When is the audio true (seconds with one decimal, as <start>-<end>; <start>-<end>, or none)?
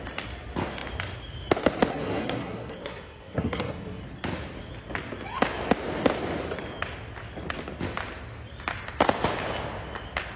0.0-1.9; 4.0-10.4